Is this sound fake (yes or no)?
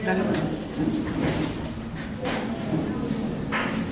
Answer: no